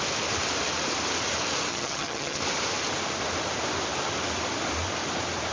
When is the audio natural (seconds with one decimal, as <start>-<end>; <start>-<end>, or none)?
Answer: 0.0-1.7; 2.4-5.5